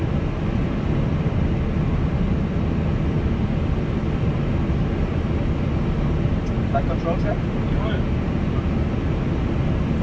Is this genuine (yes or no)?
yes